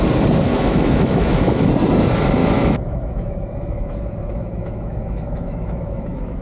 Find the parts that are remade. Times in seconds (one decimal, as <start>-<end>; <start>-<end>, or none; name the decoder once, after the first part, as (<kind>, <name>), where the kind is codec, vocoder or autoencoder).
0.5-1.7 (autoencoder, DAC-VAE); 2.4-6.4